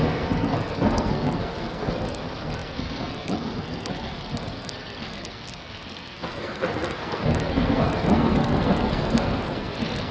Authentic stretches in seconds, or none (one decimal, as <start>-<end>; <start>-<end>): none